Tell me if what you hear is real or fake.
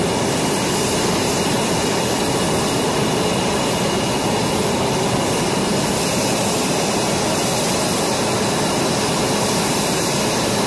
real